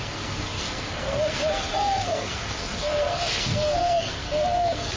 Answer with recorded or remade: remade